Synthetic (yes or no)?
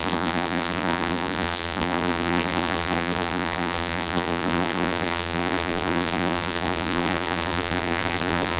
yes